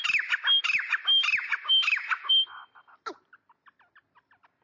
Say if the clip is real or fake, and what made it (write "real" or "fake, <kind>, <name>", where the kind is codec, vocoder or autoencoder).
real